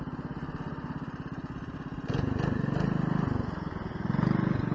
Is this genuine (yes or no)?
yes